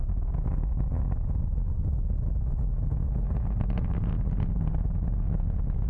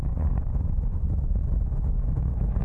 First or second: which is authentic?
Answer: first